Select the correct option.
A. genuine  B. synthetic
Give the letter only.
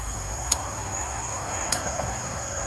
B